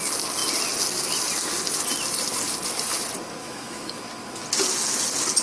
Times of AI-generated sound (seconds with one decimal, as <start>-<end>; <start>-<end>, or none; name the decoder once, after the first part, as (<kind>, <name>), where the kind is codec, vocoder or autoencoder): 3.4-4.0 (autoencoder, DAC-VAE)